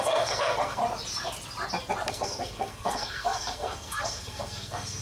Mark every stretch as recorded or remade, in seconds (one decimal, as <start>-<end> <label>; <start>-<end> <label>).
0.0-0.8 remade; 0.8-2.1 recorded; 2.1-5.0 remade